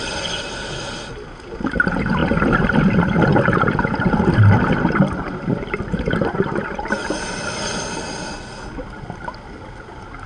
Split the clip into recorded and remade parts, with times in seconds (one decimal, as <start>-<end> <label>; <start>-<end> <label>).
0.0-10.3 recorded